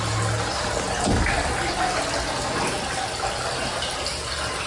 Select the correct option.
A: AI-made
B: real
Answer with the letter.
B